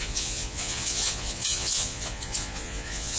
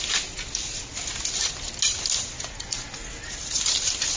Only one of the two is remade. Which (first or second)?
first